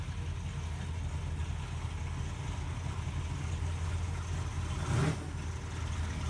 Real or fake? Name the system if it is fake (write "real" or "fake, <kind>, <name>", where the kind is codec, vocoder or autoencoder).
real